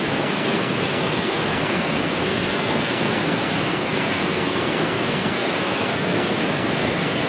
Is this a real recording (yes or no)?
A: no